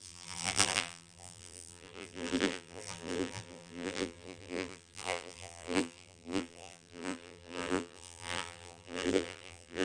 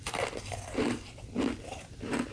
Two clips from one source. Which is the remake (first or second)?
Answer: first